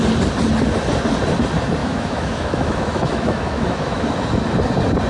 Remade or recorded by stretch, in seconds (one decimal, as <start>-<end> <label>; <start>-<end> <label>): 0.0-1.8 recorded; 1.8-4.1 remade; 4.1-5.1 recorded